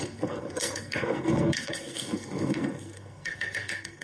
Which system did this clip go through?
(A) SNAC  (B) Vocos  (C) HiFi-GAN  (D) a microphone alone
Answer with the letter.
A